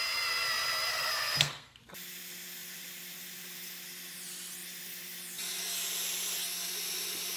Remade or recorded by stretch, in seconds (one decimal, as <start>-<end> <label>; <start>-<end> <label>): 0.0-0.9 recorded; 0.9-1.8 remade; 1.8-7.4 recorded